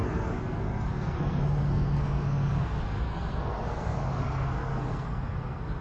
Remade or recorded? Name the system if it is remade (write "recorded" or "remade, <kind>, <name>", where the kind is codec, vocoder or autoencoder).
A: remade, codec, SNAC